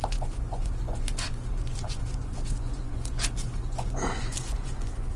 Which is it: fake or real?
fake